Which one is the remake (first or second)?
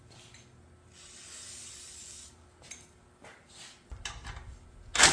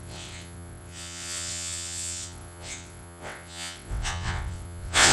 second